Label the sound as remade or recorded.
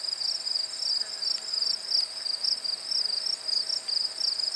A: recorded